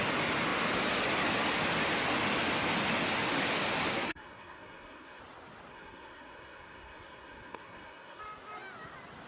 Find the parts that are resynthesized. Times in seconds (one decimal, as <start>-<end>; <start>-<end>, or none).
3.9-5.2; 5.7-8.2